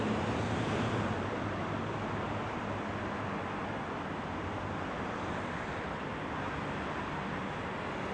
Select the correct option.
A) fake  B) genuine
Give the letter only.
B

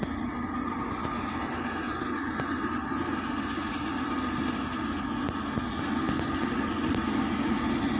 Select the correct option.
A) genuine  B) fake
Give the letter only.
A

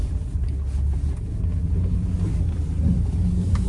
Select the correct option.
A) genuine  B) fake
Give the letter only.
A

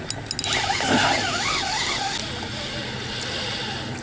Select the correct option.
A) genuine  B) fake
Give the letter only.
A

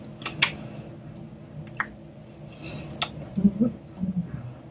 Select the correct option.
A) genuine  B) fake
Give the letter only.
A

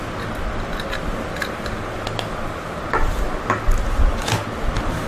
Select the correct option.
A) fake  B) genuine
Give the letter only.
B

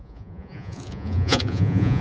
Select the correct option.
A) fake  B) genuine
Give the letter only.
A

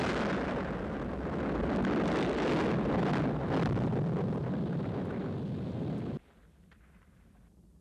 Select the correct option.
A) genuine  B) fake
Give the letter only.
A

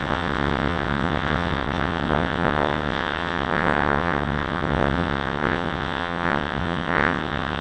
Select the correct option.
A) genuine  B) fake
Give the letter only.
B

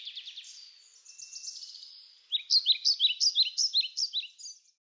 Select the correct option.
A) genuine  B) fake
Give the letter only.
A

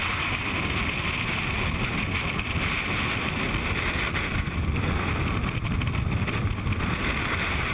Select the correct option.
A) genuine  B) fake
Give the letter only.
A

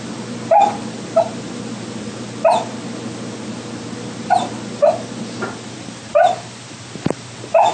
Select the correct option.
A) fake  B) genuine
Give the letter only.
B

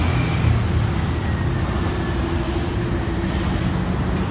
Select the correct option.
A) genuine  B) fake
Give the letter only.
A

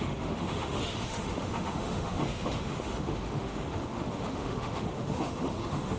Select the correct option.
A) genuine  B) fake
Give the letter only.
B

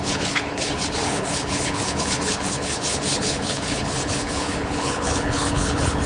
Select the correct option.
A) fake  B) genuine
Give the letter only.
A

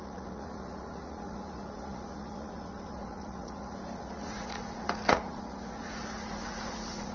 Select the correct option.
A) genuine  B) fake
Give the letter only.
B